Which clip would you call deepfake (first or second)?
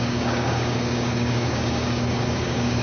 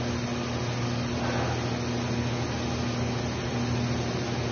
first